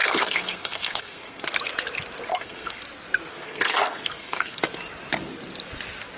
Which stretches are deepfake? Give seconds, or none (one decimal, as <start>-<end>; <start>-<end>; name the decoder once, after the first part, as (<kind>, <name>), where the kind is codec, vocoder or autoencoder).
0.0-1.4 (codec, SNAC); 2.3-2.8; 3.3-4.6